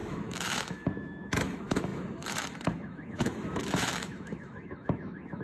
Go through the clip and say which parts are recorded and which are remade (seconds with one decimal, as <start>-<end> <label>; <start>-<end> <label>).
0.0-5.4 remade